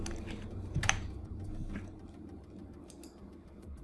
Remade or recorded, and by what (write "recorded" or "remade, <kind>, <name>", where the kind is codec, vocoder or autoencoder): remade, vocoder, BigVGAN v2